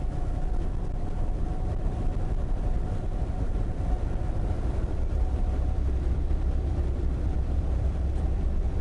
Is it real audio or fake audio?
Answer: fake